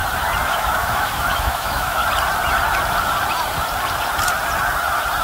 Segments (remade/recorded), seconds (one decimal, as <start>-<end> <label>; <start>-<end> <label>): 0.0-0.5 recorded; 0.5-2.0 remade; 2.0-5.2 recorded